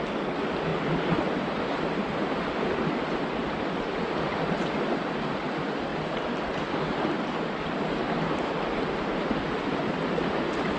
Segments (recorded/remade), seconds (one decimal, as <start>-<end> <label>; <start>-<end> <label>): 0.0-10.8 recorded